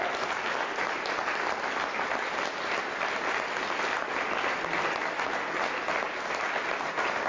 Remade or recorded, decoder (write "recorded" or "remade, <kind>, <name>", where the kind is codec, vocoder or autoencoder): recorded